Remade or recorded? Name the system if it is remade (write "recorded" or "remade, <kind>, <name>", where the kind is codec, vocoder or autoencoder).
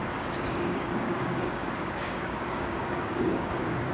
remade, codec, DAC